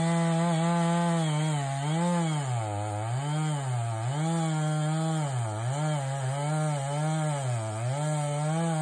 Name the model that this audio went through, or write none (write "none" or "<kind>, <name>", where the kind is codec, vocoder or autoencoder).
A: none